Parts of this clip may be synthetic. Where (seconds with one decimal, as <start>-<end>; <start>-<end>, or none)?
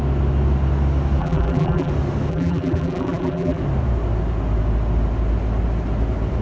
1.2-1.9; 2.3-3.6